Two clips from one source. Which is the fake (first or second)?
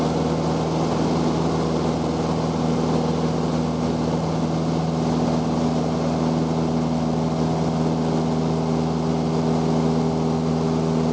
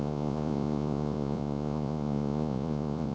second